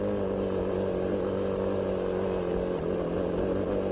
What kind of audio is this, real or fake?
real